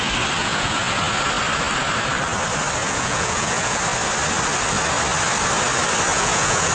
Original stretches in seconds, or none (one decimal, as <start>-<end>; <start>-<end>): 0.0-0.4; 1.0-2.8; 3.8-6.1